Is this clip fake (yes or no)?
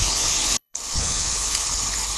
yes